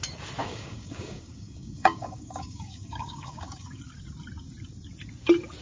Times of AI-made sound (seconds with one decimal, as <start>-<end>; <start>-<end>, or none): 0.4-3.8

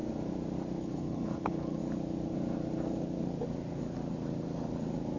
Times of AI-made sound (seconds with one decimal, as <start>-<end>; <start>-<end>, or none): 0.8-1.8

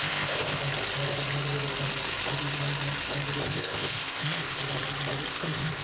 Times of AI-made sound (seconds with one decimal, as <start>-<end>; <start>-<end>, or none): 0.0-0.6; 3.4-4.6; 5.3-5.8

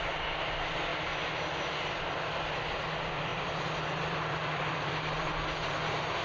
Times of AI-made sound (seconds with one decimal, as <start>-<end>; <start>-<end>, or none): 0.0-0.9; 1.8-6.2

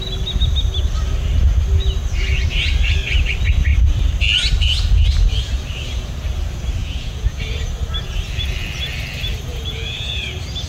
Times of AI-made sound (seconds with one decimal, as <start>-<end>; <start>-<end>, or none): 6.8-7.4; 9.5-10.2

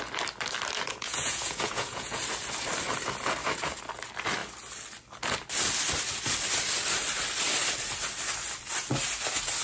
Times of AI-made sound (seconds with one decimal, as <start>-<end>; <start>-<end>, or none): 0.9-2.2

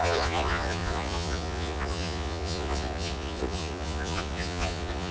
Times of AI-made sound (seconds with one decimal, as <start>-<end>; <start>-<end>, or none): 0.0-5.1